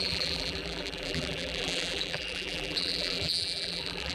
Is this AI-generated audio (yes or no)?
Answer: yes